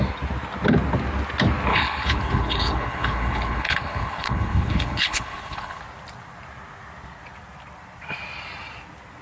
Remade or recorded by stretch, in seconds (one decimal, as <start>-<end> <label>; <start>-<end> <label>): 0.0-1.7 recorded; 1.7-5.8 remade; 5.8-9.2 recorded